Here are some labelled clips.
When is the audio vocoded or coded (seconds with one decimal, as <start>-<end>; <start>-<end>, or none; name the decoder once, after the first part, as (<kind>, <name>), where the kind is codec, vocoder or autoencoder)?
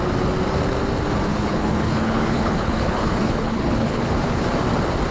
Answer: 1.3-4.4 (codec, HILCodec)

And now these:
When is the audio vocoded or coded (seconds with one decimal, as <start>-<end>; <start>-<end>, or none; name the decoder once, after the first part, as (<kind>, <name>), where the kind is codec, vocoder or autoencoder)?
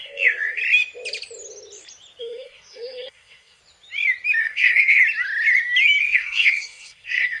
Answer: 0.0-0.6 (codec, SNAC); 2.2-3.6; 4.4-5.0; 6.0-7.4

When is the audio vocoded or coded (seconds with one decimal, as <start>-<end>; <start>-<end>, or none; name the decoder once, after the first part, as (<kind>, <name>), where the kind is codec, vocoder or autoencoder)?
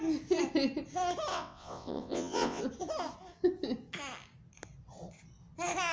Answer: 1.3-2.6 (vocoder, WaveNeXt)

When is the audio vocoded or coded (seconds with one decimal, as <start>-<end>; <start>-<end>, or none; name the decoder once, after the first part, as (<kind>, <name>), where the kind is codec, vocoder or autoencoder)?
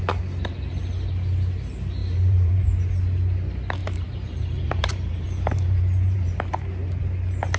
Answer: 2.0-2.6 (vocoder, BigVGAN v2); 3.8-6.4